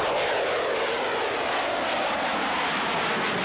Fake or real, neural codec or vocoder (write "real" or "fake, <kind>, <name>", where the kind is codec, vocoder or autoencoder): real